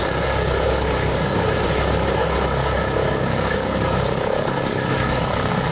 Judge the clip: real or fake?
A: fake